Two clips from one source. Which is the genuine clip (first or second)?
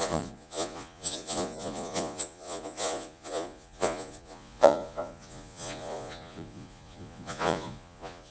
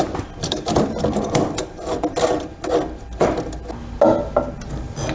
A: second